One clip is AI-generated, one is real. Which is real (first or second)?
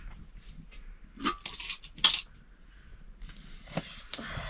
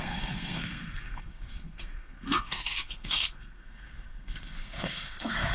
first